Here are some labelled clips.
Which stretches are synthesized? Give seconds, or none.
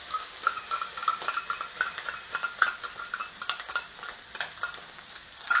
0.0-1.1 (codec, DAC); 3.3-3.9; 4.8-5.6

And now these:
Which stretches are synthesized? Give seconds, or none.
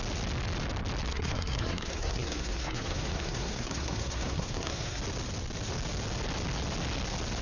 1.1-5.0 (codec, SNAC)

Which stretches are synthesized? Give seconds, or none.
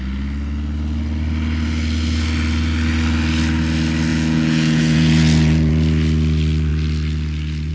4.1-5.7 (vocoder, Vocos)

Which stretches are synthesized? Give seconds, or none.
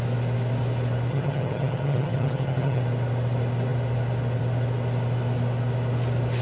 1.1-2.8 (vocoder, HiFi-GAN)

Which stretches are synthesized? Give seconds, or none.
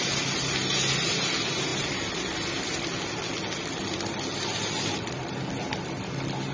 none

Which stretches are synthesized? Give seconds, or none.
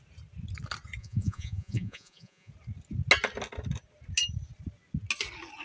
1.0-2.5 (vocoder, Vocos)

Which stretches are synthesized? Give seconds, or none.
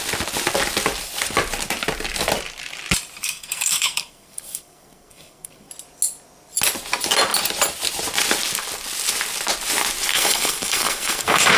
3.2-5.7 (codec, SNAC); 10.1-11.6